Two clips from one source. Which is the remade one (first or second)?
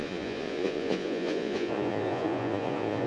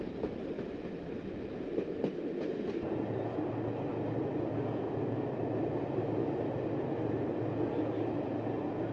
first